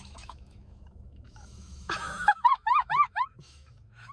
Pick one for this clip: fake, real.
fake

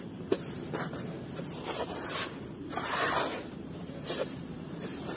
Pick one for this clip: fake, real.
fake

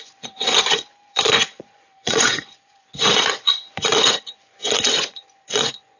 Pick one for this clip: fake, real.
fake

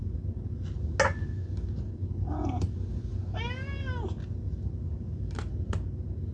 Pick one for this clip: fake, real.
real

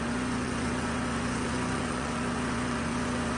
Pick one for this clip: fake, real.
fake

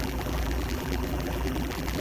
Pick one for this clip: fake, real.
fake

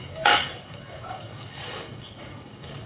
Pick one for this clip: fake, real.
fake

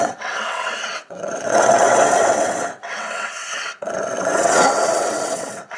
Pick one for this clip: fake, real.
fake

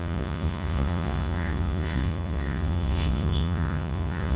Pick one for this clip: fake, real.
fake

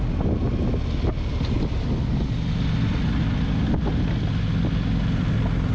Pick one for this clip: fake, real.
real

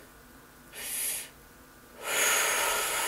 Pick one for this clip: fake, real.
real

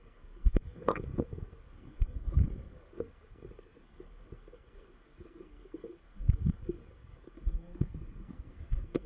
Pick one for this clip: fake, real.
fake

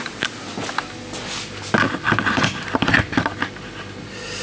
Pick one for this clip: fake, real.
real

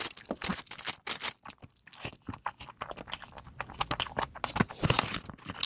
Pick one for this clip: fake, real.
real